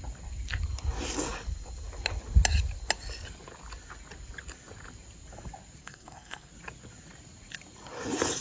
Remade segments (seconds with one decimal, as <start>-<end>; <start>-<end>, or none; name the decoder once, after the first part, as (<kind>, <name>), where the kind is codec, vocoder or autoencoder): 5.8-6.5 (codec, SNAC)